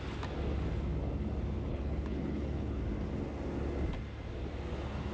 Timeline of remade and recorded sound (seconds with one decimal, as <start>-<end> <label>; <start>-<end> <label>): 0.0-1.7 recorded; 1.7-2.8 remade; 2.8-5.1 recorded